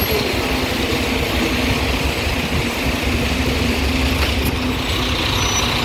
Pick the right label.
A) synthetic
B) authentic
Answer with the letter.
B